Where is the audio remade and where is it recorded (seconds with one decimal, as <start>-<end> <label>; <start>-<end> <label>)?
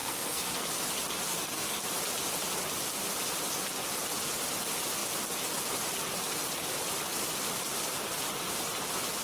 0.0-0.7 remade; 0.7-1.3 recorded; 1.3-1.8 remade; 1.8-9.2 recorded